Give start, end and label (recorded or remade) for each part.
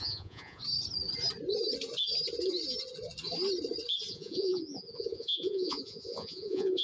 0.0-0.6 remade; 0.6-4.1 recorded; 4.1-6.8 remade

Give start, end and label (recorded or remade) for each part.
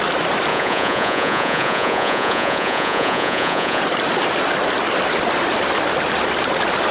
0.0-0.5 recorded; 0.5-3.8 remade; 3.8-6.9 recorded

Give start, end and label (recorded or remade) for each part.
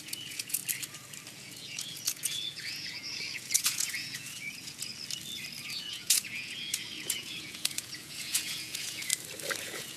0.0-0.6 remade; 0.6-1.3 recorded; 1.3-4.9 remade; 4.9-5.6 recorded; 5.6-9.1 remade; 9.1-9.6 recorded; 9.6-10.0 remade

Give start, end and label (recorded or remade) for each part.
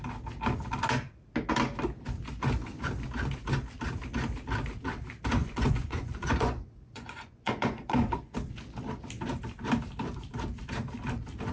0.0-5.4 recorded; 5.4-8.2 remade; 8.2-11.5 recorded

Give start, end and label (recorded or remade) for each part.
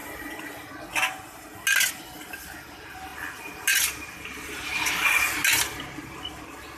0.0-6.8 recorded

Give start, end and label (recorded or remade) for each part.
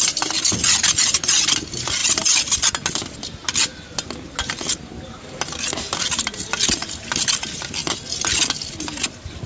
0.0-9.5 recorded